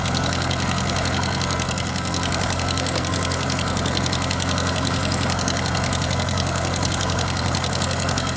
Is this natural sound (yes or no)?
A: no